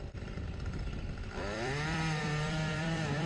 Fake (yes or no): yes